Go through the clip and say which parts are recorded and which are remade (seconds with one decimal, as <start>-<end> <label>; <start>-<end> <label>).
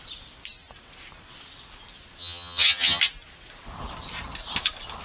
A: 0.0-2.2 recorded; 2.2-3.0 remade; 3.0-5.0 recorded